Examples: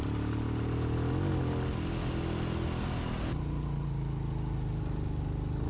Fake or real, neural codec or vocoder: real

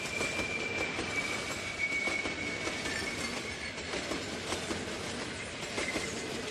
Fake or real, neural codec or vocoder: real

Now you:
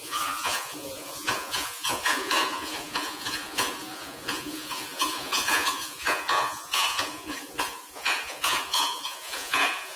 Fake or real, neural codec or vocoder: fake, vocoder, Vocos